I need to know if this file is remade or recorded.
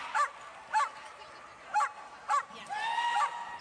recorded